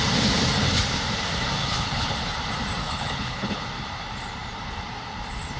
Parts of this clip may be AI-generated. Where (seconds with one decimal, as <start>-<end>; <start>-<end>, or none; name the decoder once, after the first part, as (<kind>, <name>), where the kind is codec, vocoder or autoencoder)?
1.6-2.1 (codec, HILCodec); 2.8-3.6